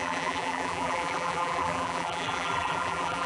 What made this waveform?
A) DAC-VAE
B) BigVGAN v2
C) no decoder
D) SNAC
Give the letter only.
B